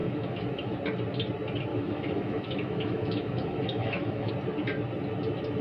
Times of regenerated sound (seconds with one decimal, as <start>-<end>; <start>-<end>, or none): 0.0-0.7; 1.7-4.3

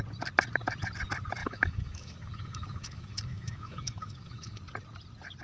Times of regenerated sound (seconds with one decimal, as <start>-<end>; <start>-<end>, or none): 1.4-4.6